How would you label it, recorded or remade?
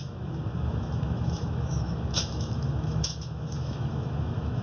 remade